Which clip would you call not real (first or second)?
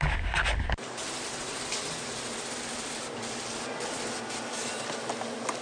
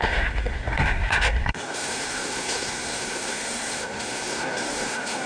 second